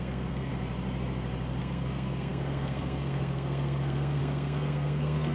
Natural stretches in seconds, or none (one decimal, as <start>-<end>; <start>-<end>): 0.5-1.6